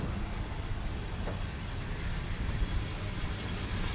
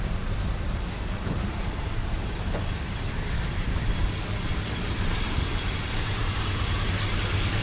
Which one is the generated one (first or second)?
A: second